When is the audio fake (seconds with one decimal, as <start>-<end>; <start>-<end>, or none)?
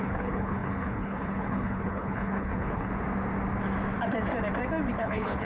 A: 0.0-2.9; 5.0-5.4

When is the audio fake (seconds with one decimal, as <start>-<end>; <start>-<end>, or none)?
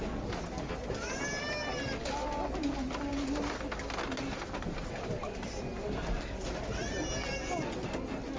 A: none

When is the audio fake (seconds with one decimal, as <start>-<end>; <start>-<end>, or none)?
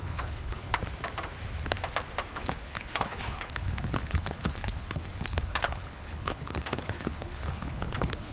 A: 0.0-0.8; 2.3-8.3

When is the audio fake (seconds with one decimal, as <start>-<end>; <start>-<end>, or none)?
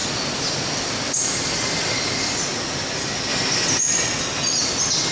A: none